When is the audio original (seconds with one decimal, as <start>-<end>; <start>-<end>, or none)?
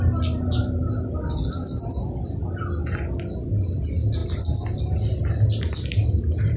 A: 0.0-6.6